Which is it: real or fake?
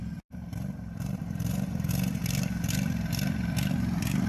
fake